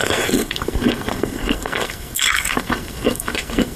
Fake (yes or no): yes